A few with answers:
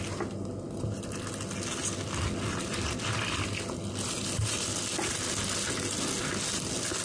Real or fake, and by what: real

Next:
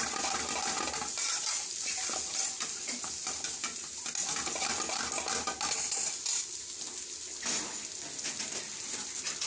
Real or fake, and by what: real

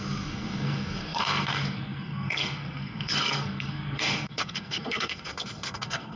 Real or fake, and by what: fake, codec, SNAC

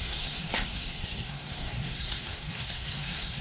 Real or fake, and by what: fake, codec, SNAC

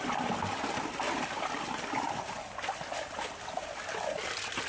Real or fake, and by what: real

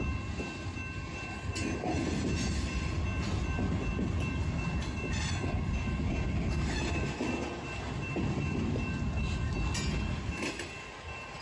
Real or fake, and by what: real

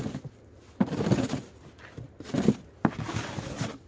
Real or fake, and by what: real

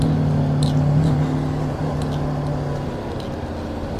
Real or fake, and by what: real